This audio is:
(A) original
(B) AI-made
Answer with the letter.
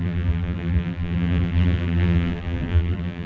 B